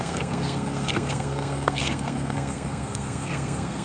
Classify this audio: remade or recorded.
remade